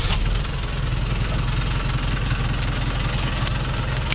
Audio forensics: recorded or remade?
recorded